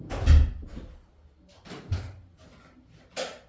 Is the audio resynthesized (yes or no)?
no